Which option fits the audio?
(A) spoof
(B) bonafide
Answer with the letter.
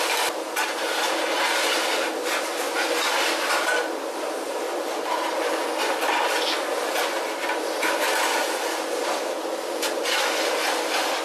B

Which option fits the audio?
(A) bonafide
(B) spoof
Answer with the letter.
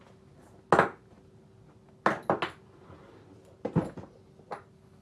A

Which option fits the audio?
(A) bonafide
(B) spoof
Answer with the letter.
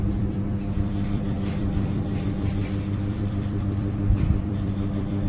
B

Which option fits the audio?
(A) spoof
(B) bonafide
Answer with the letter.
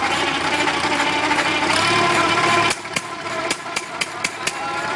A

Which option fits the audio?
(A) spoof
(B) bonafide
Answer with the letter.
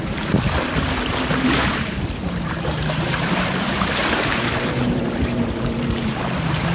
A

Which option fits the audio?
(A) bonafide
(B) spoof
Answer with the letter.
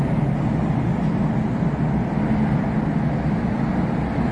A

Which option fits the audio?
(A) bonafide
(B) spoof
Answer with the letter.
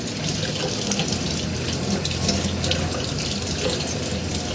A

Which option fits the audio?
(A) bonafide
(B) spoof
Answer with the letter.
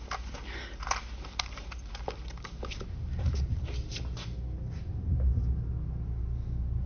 A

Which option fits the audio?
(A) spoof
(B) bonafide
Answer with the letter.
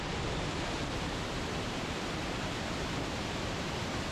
A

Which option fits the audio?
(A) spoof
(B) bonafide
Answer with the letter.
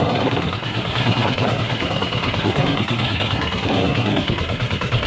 A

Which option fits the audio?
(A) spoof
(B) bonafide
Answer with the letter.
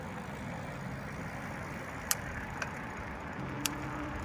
B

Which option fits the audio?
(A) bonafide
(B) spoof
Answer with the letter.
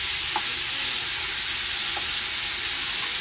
A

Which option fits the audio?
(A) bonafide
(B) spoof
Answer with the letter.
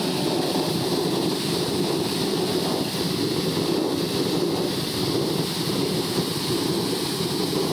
B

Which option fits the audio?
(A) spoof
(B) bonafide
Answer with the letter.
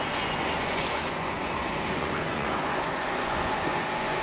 A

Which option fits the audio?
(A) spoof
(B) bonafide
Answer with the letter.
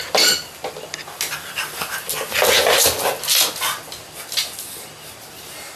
B